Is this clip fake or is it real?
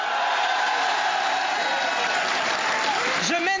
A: real